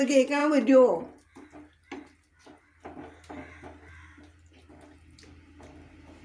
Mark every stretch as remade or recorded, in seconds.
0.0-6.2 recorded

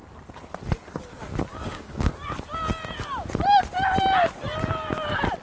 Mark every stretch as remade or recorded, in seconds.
0.0-1.5 recorded; 1.5-2.1 remade; 2.1-5.4 recorded

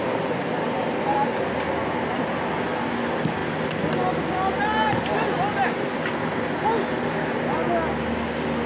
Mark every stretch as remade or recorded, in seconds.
0.0-8.7 recorded

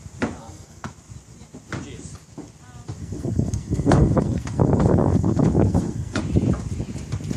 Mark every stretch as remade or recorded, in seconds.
0.0-0.4 recorded; 0.4-0.9 remade; 0.9-3.0 recorded; 3.0-6.2 remade; 6.2-7.4 recorded